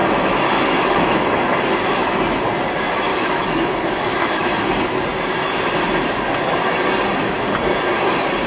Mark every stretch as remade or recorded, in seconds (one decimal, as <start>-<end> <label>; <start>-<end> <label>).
0.0-2.2 remade; 2.2-3.1 recorded; 3.1-4.5 remade; 4.5-8.5 recorded